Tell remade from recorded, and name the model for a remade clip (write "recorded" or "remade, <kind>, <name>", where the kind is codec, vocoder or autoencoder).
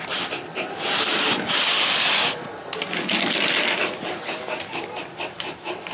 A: recorded